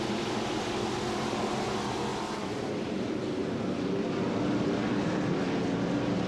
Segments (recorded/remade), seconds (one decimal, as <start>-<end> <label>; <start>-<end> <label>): 0.0-6.3 recorded

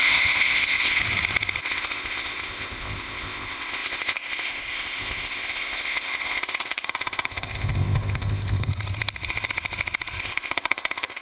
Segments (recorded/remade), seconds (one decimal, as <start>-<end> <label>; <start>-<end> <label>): 0.0-1.0 remade; 1.0-1.6 recorded; 1.6-8.7 remade; 8.7-10.2 recorded; 10.2-11.2 remade

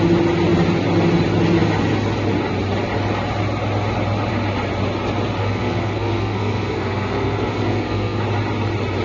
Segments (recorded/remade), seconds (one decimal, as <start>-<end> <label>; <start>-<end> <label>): 0.0-5.4 recorded; 5.4-8.2 remade; 8.2-9.0 recorded

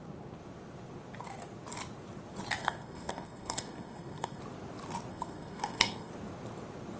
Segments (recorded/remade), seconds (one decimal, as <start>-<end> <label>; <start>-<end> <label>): 0.0-2.6 recorded; 2.6-4.4 remade; 4.4-5.1 recorded; 5.1-6.1 remade; 6.1-7.0 recorded

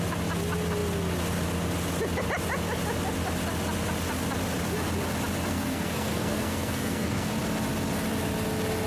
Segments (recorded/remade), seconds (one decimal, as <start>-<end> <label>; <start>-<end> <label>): 0.0-5.5 recorded; 5.5-7.3 remade; 7.3-8.9 recorded

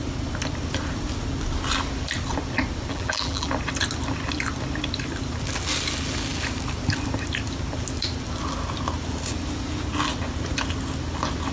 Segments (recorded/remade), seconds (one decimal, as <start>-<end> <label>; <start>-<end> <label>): 0.0-2.9 recorded; 2.9-3.5 remade; 3.5-11.5 recorded